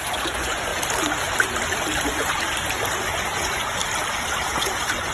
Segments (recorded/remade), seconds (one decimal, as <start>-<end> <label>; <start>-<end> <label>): 0.0-0.7 remade; 0.7-3.0 recorded; 3.0-3.8 remade; 3.8-4.4 recorded; 4.4-5.1 remade